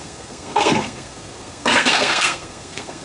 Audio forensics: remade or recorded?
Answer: remade